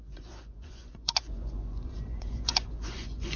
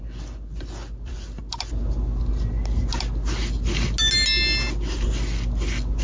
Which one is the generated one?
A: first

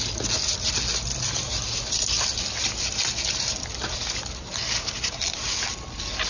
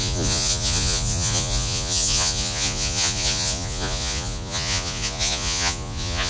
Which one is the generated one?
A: second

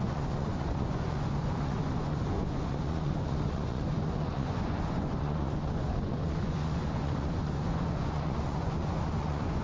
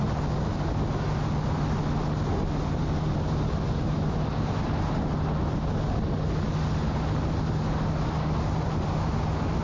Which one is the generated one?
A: first